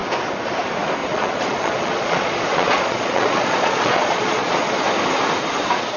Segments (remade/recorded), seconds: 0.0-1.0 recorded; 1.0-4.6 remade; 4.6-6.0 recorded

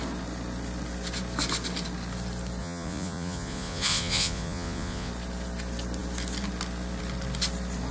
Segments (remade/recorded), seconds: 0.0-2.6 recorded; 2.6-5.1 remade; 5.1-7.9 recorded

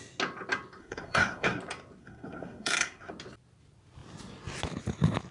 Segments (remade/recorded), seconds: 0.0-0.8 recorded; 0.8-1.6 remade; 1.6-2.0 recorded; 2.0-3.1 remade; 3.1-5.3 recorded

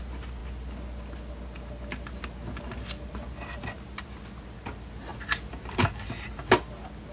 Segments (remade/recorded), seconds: 0.0-7.1 recorded

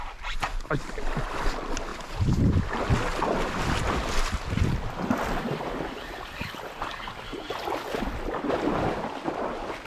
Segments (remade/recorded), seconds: 0.0-1.9 recorded; 1.9-2.8 remade; 2.8-9.9 recorded

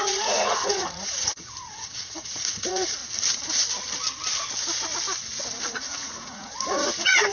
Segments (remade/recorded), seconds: 0.0-3.0 remade; 3.0-5.7 recorded; 5.7-7.3 remade